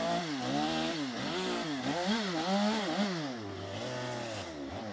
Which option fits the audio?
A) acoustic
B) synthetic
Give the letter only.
A